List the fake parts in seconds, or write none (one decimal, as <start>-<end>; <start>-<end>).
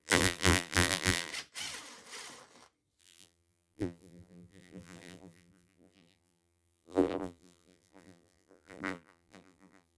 0.0-1.3; 3.0-10.0